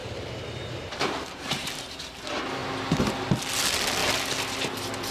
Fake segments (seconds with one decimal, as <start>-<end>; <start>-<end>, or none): 0.0-2.0

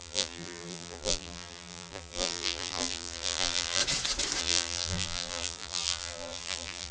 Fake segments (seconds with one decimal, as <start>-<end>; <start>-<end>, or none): 0.0-3.8; 4.4-6.9

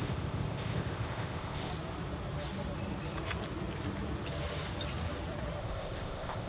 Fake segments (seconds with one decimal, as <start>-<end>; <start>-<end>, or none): 0.0-1.7; 5.6-6.5

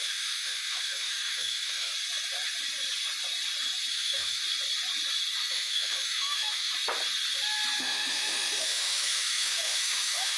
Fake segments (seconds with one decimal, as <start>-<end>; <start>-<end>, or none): 0.0-1.9; 3.9-4.4; 5.5-6.7; 7.8-10.4